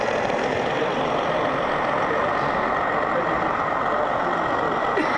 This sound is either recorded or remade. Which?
recorded